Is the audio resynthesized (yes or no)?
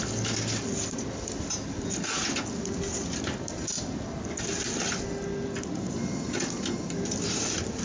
no